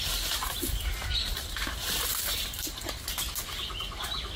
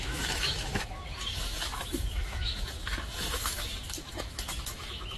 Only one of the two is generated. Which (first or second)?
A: second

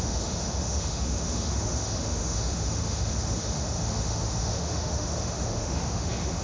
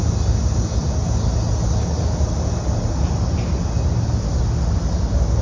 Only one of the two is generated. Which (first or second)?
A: first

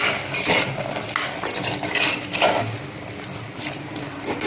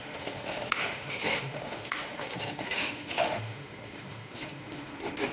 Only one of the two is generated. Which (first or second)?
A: second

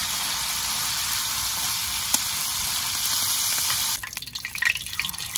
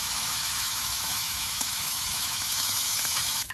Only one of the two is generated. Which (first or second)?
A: second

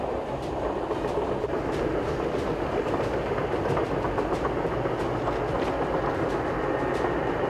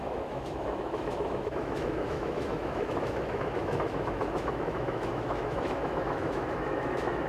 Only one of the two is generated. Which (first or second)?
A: second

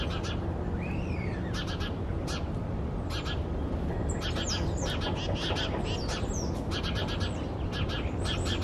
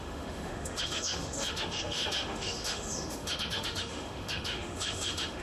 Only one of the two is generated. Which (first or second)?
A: second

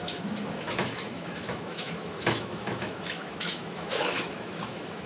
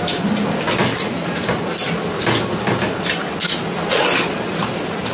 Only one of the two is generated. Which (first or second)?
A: first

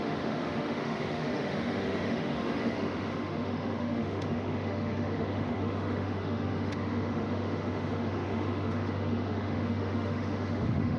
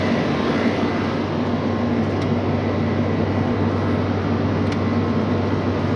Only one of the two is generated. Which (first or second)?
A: first